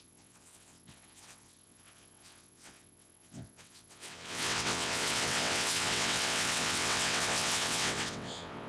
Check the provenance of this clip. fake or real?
fake